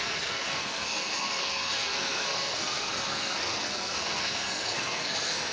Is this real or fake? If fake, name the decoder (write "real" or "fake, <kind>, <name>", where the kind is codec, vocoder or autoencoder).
fake, codec, SNAC